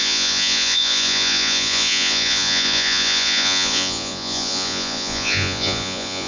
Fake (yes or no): yes